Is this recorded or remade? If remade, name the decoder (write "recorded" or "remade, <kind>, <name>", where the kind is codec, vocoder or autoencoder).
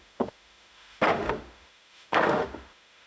remade, autoencoder, DAC-VAE